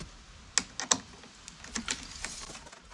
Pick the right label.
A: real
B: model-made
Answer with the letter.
A